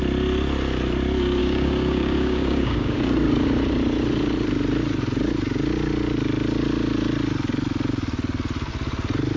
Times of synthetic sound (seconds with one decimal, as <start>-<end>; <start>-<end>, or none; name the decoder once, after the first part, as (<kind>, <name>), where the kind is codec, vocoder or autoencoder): 1.4-3.0 (codec, DAC)